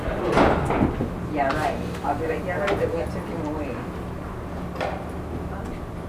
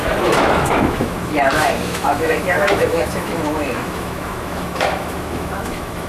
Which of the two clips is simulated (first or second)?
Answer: second